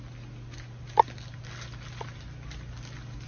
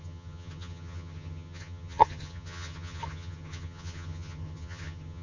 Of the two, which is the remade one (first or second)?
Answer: second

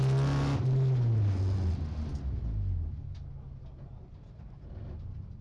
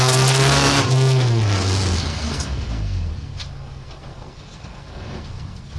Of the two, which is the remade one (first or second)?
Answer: second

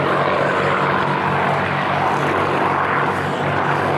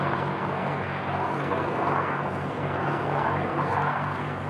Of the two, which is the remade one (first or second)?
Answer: second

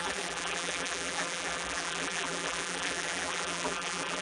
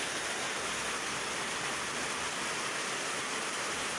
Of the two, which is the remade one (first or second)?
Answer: first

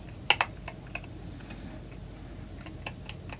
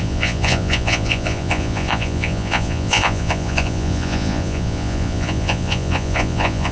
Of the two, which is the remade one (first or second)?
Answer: second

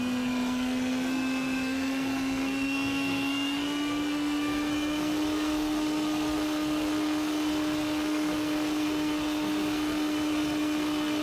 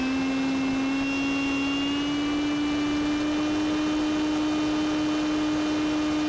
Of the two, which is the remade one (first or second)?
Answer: first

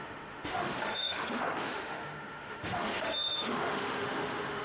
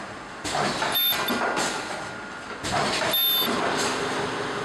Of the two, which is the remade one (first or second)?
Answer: first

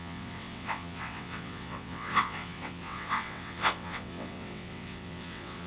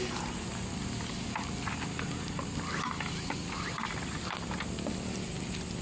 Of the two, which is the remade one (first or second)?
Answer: first